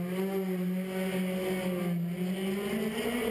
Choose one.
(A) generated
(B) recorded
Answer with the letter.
B